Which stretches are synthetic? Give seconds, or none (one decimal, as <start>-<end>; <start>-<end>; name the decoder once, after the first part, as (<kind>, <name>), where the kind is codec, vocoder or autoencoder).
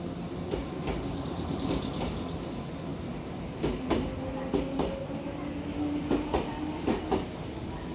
none